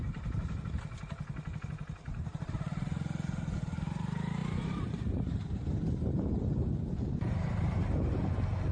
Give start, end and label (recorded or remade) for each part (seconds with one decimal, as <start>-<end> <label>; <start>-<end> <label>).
0.0-4.4 recorded; 4.4-8.2 remade; 8.2-8.7 recorded